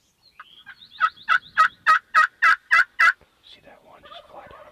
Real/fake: real